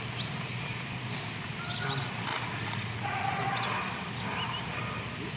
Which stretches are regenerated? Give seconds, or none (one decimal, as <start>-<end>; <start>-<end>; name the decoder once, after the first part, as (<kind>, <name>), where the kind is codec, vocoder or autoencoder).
2.3-3.4 (vocoder, Vocos)